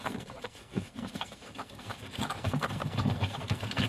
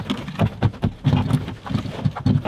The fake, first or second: first